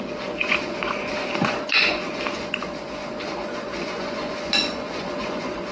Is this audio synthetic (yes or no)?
yes